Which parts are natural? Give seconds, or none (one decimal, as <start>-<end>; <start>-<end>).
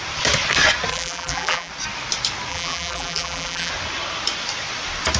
0.0-0.9; 1.7-2.5; 3.7-5.2